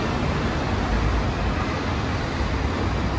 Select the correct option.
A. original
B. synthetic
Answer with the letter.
A